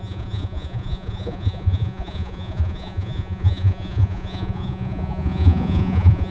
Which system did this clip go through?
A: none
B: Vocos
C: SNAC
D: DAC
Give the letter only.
B